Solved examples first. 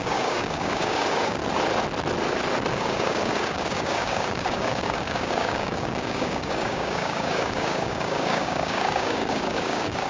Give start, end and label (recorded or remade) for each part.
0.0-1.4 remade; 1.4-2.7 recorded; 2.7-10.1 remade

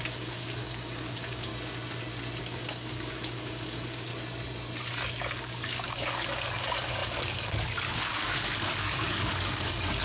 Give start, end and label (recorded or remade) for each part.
0.0-1.5 remade; 1.5-2.4 recorded; 2.4-4.1 remade; 4.1-5.3 recorded; 5.3-10.0 remade